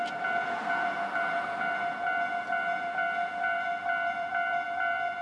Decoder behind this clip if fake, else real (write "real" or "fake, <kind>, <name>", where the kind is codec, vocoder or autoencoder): fake, vocoder, BigVGAN v2